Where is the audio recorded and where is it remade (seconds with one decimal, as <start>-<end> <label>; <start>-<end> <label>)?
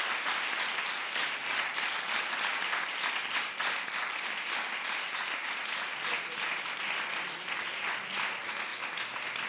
0.0-2.5 recorded; 2.5-3.6 remade; 3.6-8.7 recorded; 8.7-9.5 remade